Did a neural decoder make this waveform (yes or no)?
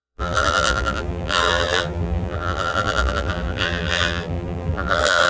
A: yes